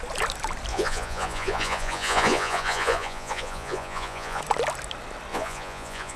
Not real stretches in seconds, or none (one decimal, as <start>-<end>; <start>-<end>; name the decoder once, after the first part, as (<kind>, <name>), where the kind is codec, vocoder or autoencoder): 0.7-4.4 (vocoder, Vocos); 5.3-6.2